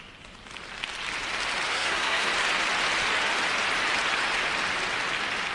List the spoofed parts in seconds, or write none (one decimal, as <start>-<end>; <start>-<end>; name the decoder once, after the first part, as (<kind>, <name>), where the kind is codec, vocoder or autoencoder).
1.7-2.3 (codec, SNAC)